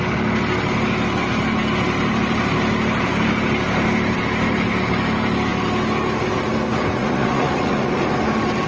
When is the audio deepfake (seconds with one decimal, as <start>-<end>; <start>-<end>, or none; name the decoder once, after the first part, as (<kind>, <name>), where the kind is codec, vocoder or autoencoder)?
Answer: 7.0-8.0 (vocoder, Vocos)